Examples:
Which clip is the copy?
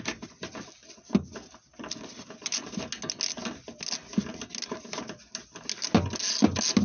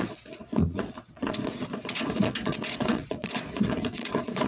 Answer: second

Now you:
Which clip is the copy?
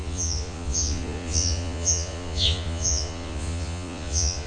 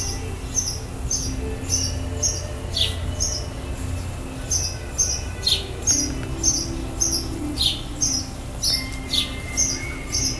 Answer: first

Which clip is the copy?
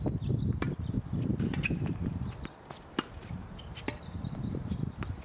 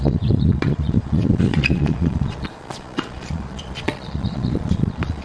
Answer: second